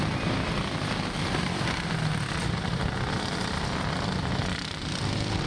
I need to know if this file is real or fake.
real